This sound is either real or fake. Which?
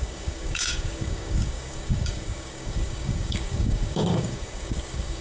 fake